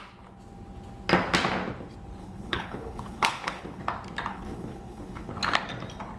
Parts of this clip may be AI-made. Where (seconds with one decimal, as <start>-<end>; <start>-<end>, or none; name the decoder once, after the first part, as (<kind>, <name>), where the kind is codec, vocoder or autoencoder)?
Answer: 2.2-3.8 (codec, HILCodec); 4.3-5.3